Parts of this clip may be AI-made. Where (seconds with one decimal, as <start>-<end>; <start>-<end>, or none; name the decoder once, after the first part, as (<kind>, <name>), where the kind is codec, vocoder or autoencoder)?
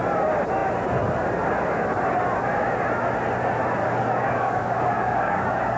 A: 3.8-5.8 (codec, DAC)